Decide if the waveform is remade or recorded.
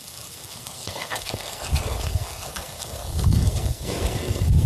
remade